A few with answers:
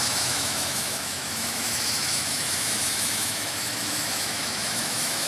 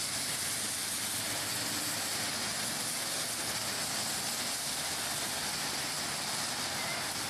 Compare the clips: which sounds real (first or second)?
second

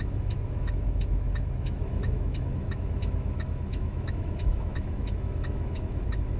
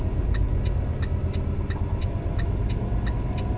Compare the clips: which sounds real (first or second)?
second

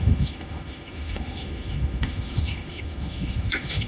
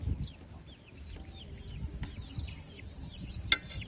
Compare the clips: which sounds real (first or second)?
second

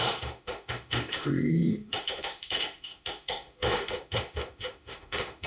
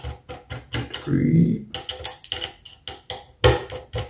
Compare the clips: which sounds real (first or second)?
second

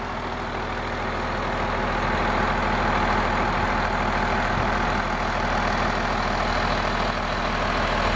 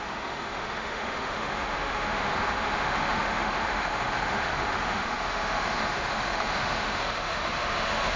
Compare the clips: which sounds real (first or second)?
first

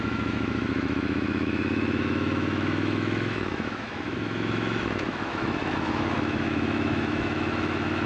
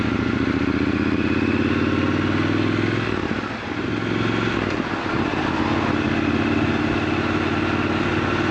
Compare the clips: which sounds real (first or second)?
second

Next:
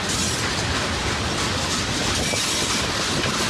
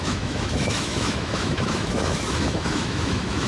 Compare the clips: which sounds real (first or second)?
first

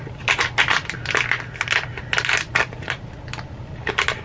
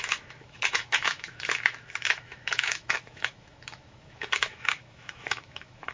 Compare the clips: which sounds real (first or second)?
first